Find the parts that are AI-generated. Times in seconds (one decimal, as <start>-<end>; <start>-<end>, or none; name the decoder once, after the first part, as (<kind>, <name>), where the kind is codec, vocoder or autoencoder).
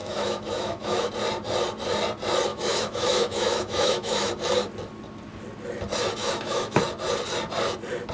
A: 0.0-1.1 (autoencoder, DAC-VAE); 2.5-4.3; 6.2-6.8